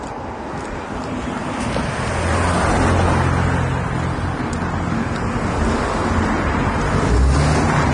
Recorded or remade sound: recorded